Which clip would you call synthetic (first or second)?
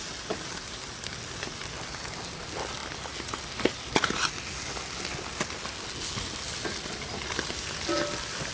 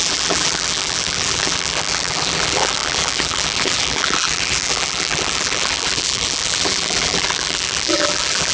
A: second